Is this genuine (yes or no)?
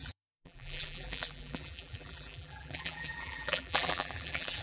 no